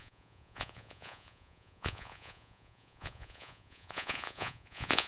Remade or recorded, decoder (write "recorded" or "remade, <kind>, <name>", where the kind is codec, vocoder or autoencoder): remade, vocoder, Vocos